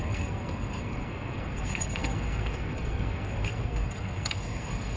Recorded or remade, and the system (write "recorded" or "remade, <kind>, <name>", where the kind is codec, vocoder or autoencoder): remade, codec, SNAC